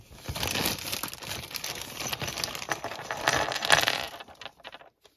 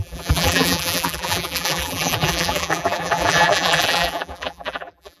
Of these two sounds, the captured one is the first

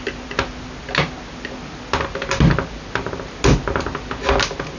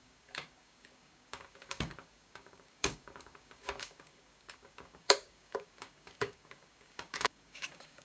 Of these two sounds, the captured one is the first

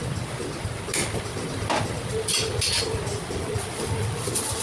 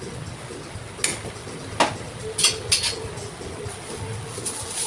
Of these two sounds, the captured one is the second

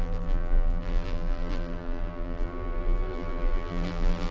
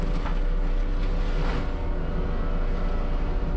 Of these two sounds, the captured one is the second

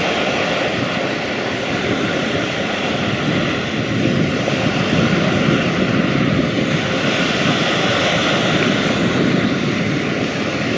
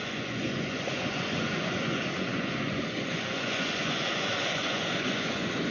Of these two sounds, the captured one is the first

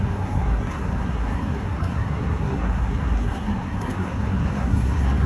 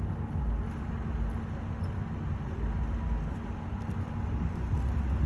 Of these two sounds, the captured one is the second